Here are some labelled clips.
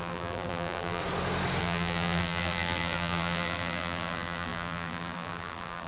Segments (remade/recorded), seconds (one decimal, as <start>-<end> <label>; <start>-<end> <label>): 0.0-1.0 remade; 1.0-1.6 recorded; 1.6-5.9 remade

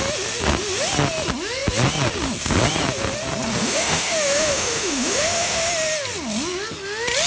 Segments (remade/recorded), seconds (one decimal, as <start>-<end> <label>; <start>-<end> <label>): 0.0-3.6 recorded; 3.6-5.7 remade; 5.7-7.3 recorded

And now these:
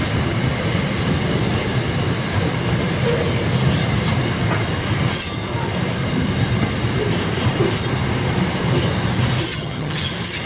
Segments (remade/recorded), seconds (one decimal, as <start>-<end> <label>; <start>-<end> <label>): 0.0-9.5 recorded; 9.5-10.1 remade; 10.1-10.5 recorded